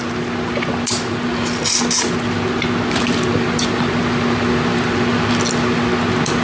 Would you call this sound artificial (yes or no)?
no